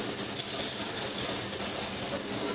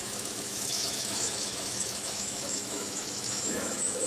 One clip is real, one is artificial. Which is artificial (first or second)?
second